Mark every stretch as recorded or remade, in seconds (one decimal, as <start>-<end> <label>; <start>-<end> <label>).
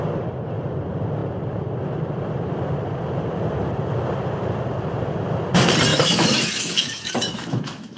0.0-5.9 recorded; 5.9-8.0 remade